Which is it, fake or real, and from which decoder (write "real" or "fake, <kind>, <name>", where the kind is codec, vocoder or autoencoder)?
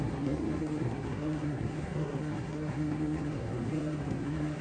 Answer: fake, codec, SNAC